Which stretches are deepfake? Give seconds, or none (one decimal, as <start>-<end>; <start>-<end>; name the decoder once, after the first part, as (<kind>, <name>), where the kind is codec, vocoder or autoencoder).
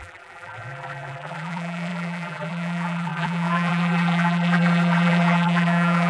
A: 0.0-6.1 (vocoder, BigVGAN v2)